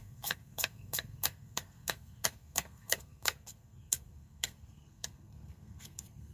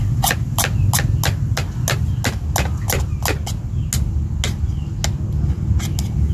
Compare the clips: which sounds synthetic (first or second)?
first